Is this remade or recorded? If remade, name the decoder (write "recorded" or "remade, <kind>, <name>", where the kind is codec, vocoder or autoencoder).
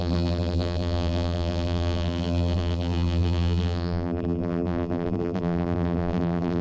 remade, vocoder, BigVGAN v2